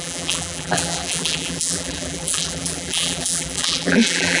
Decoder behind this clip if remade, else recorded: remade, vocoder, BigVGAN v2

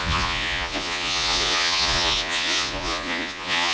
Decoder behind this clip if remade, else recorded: remade, vocoder, Vocos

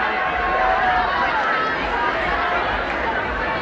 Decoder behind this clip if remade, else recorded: recorded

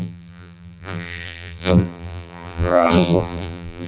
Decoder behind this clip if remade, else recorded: remade, vocoder, BigVGAN v2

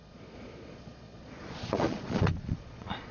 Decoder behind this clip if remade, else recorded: remade, vocoder, Vocos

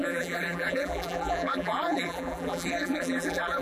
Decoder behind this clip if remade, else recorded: remade, vocoder, BigVGAN v2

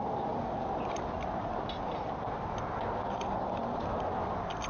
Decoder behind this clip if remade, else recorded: recorded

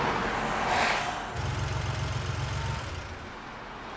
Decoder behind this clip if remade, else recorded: recorded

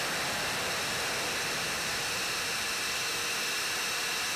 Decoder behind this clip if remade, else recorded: recorded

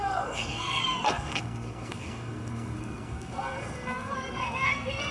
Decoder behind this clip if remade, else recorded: remade, codec, SNAC